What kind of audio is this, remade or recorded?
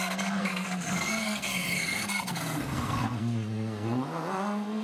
remade